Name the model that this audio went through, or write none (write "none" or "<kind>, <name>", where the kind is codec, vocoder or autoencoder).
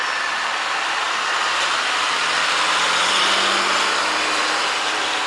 none